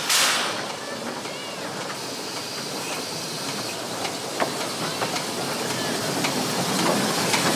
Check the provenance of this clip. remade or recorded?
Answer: recorded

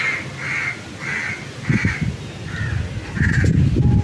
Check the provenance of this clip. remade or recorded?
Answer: recorded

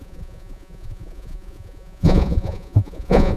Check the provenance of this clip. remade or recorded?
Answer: remade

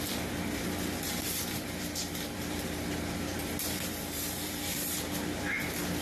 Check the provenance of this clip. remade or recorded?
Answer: remade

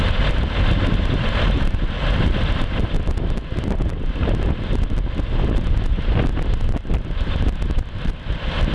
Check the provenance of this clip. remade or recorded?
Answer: recorded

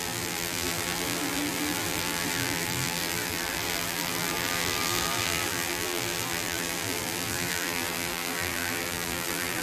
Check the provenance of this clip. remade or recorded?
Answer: remade